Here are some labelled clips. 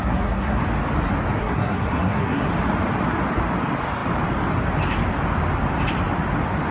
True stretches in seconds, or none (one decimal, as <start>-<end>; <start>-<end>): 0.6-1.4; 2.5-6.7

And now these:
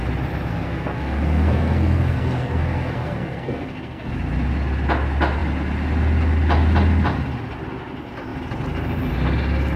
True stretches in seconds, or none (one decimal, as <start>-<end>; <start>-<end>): 0.0-0.5; 4.1-9.8

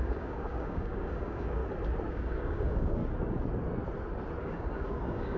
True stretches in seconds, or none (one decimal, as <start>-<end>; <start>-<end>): 1.6-2.1; 3.0-4.4

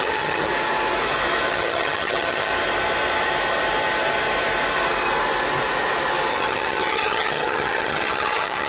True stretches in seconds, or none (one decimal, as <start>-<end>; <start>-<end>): 0.5-1.5; 2.5-6.3

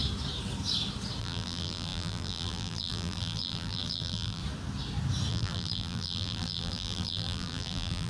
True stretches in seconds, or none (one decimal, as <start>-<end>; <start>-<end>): 0.0-1.2; 4.4-5.3